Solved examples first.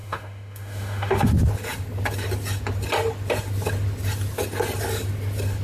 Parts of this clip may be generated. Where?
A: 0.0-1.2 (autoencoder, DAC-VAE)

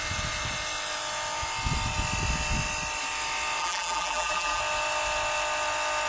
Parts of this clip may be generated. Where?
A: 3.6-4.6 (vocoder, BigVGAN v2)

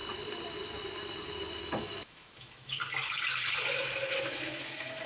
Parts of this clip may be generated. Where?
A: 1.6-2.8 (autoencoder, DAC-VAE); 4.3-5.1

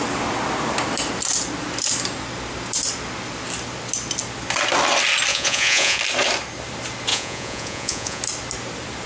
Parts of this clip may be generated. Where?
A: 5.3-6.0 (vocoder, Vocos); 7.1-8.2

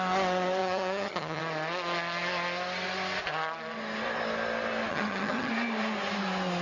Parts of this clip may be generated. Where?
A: 0.6-1.4 (vocoder, HiFi-GAN); 4.9-5.5

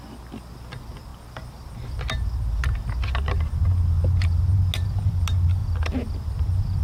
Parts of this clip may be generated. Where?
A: none